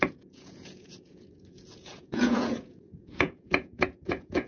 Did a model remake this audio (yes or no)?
yes